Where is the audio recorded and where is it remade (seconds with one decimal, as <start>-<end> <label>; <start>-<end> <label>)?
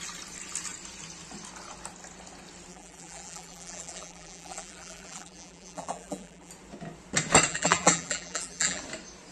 0.0-2.7 recorded; 2.7-6.5 remade; 6.5-7.5 recorded; 7.5-8.8 remade; 8.8-9.3 recorded